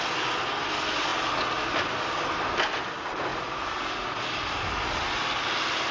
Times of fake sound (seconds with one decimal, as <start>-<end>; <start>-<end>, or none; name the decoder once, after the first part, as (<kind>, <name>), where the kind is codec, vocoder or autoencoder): 3.3-4.2 (vocoder, Vocos)